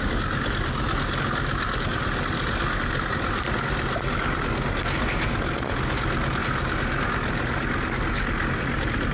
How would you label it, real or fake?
real